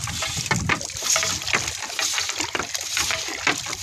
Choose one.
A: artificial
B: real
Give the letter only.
B